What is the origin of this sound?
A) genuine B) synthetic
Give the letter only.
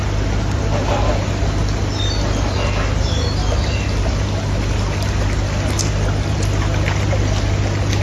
A